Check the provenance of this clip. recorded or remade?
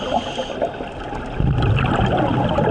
recorded